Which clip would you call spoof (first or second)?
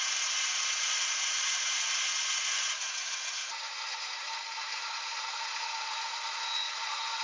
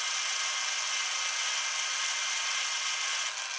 first